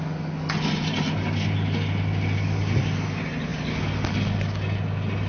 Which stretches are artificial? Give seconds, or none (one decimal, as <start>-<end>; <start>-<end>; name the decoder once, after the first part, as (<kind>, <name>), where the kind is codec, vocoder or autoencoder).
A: none